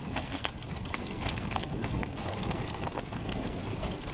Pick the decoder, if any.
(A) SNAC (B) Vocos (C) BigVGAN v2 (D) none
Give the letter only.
A